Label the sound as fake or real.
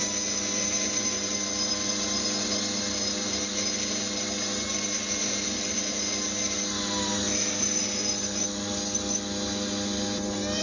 real